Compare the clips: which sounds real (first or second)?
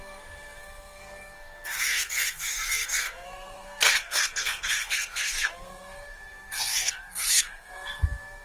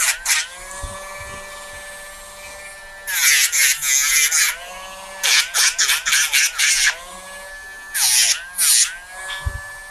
second